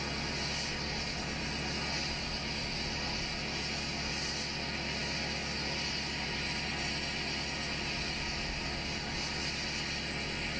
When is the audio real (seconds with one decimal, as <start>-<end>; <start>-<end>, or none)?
0.0-10.6